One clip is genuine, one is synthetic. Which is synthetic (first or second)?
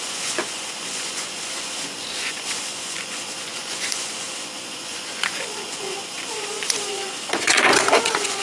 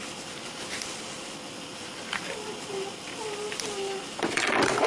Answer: first